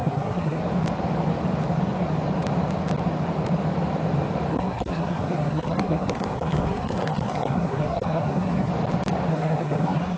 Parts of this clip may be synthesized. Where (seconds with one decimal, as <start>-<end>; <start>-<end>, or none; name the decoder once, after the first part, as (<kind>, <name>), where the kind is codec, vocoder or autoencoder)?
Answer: 0.0-0.6 (codec, SNAC); 4.5-8.7; 9.3-10.2